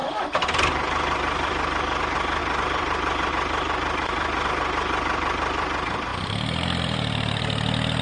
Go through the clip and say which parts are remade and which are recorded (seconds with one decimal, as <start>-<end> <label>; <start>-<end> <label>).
0.0-2.0 remade; 2.0-2.4 recorded; 2.4-3.3 remade; 3.3-6.1 recorded; 6.1-7.4 remade; 7.4-8.0 recorded